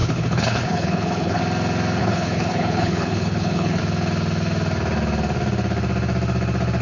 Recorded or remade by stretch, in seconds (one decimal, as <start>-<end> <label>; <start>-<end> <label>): 0.0-1.4 remade; 1.4-2.0 recorded; 2.0-3.8 remade; 3.8-6.8 recorded